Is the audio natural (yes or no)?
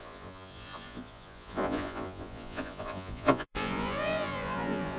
no